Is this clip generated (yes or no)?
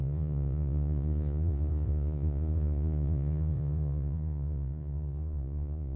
yes